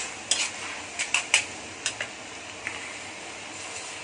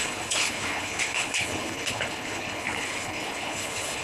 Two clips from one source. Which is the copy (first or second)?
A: second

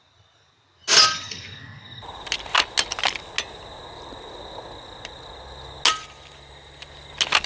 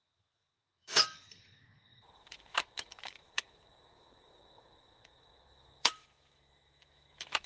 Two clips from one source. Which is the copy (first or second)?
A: second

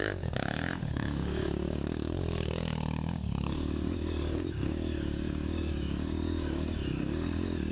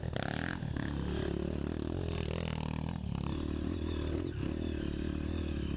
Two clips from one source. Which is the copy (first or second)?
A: first